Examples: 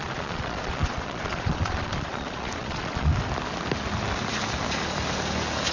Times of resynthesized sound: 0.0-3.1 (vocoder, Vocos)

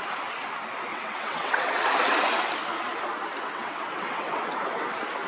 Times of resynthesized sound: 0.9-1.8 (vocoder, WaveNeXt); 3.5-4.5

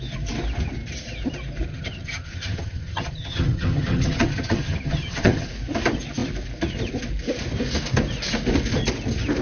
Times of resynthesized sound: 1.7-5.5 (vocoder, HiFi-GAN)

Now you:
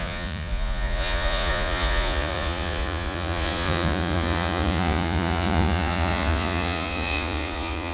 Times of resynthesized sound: 0.0-7.9 (vocoder, Vocos)

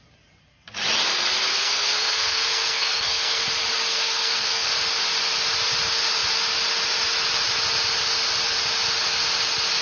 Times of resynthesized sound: 1.5-3.4 (codec, SNAC); 3.9-4.7

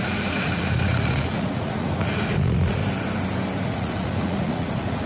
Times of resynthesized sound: 0.0-2.8 (vocoder, Vocos); 3.6-5.1